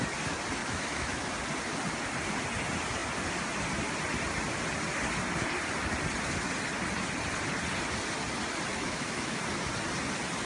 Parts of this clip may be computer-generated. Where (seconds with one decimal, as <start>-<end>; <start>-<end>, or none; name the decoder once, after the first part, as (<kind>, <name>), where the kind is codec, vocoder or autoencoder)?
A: 0.6-1.3 (autoencoder, DAC-VAE); 8.7-9.4